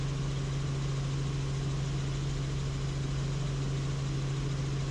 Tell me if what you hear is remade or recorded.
recorded